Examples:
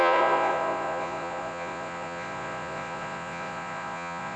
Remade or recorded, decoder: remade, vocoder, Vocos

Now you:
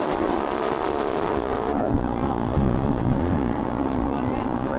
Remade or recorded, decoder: remade, vocoder, Vocos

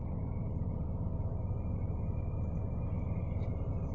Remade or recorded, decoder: recorded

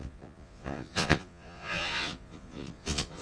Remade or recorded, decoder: remade, vocoder, Vocos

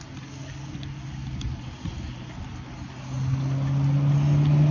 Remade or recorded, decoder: recorded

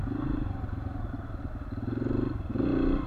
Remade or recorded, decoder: recorded